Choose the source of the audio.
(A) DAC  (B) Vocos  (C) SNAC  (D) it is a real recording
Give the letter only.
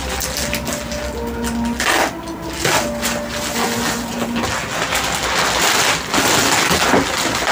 D